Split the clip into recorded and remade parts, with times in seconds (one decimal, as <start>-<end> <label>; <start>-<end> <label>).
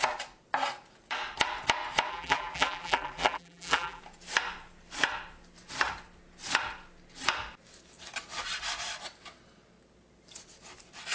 0.0-2.1 recorded; 2.1-4.0 remade; 4.0-11.1 recorded